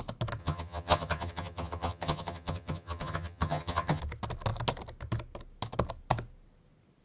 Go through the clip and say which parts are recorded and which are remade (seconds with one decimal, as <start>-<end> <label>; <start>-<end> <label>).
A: 0.0-0.4 recorded; 0.4-4.0 remade; 4.0-7.0 recorded